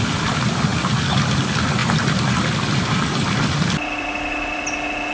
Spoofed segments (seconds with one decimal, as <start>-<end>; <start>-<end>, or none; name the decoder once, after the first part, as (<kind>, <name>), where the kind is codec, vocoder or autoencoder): 1.8-4.6 (vocoder, BigVGAN v2)

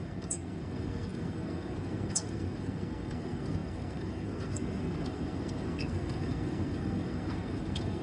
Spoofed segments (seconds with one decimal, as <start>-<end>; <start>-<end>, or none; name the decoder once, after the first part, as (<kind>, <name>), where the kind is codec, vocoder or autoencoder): 0.0-8.0 (codec, SNAC)

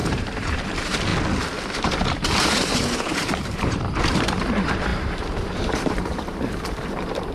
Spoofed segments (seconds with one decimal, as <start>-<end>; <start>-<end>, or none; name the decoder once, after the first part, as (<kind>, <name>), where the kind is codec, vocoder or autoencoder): 0.0-1.1 (vocoder, BigVGAN v2); 1.7-7.3

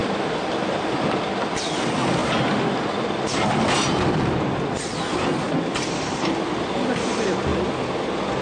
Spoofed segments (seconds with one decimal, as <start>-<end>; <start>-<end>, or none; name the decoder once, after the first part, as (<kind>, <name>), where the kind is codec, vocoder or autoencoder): 1.6-2.2 (vocoder, BigVGAN v2); 5.5-7.5

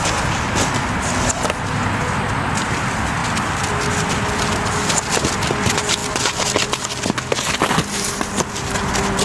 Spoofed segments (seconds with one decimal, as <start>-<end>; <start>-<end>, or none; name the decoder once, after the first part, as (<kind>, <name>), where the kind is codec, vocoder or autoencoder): none

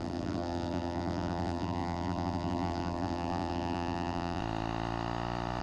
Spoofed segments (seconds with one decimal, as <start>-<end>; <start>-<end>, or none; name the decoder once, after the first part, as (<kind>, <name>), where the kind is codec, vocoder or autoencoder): 0.0-4.4 (vocoder, BigVGAN v2)

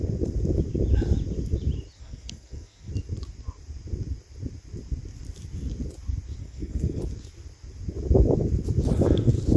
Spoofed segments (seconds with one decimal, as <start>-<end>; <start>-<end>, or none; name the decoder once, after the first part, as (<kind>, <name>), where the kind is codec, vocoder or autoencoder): 2.0-2.9 (codec, SNAC); 6.4-7.0